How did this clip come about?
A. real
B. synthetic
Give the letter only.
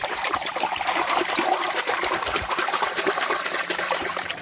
B